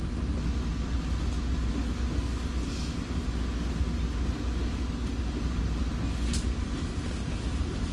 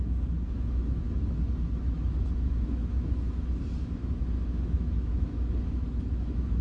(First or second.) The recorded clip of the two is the first